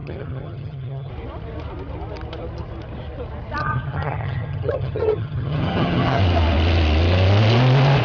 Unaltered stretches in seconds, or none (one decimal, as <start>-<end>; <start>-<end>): 1.1-3.6; 6.2-8.0